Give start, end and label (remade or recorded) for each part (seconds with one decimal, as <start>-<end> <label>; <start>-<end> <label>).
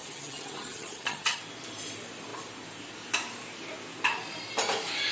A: 0.0-1.4 remade; 1.4-5.1 recorded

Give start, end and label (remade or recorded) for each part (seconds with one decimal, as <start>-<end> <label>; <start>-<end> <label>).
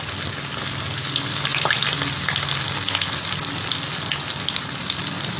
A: 0.0-5.4 recorded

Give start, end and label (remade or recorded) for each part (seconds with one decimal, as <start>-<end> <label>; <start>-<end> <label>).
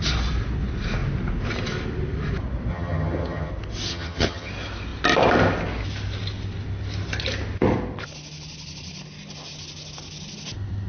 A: 0.0-2.7 recorded; 2.7-3.5 remade; 3.5-3.9 recorded; 3.9-4.5 remade; 4.5-10.9 recorded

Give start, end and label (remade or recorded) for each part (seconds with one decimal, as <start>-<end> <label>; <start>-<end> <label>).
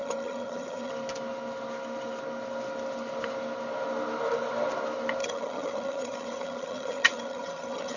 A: 0.0-0.9 remade; 0.9-5.2 recorded; 5.2-8.0 remade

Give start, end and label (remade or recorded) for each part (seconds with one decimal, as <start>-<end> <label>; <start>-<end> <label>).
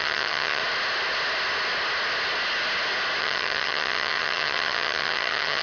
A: 0.0-0.6 remade; 0.6-3.2 recorded; 3.2-5.6 remade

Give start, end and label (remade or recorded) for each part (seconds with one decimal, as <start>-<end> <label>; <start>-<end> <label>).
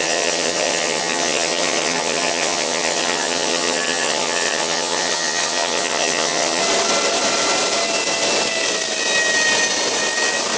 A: 0.0-6.6 remade; 6.6-10.6 recorded